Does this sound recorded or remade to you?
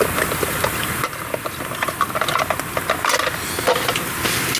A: recorded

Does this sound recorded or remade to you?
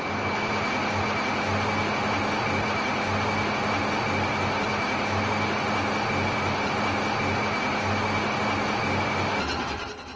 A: recorded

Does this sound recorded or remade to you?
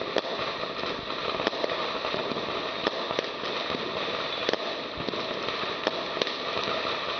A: recorded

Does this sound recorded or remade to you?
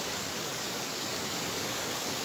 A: remade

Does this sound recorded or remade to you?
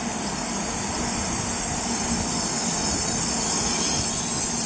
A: recorded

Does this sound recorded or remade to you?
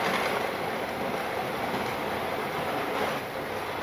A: recorded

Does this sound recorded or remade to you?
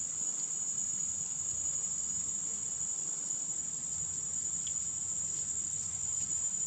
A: recorded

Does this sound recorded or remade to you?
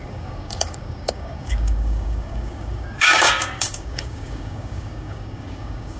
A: remade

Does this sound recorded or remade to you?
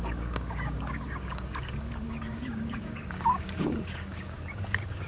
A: remade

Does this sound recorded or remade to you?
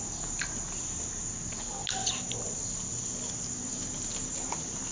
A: recorded